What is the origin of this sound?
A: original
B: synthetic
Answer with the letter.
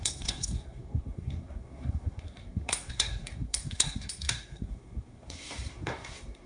B